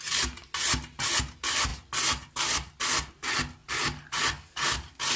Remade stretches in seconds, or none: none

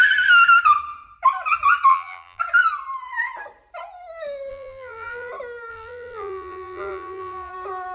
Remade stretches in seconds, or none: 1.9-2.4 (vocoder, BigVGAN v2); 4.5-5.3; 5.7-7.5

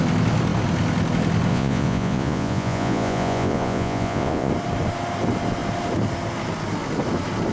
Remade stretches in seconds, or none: 1.5-4.5 (vocoder, Vocos)

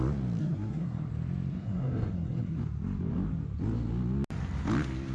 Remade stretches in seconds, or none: 0.4-1.1 (codec, SNAC); 1.5-2.6

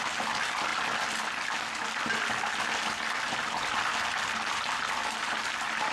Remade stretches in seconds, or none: none

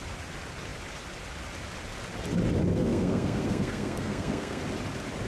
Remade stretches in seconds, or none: 2.7-4.6 (codec, SNAC)

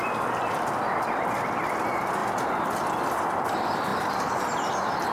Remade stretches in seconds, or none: none

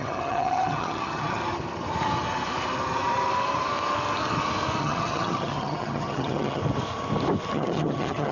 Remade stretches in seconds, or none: 0.0-1.4 (vocoder, HiFi-GAN); 4.8-6.6; 7.5-8.3